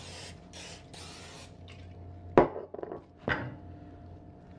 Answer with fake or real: real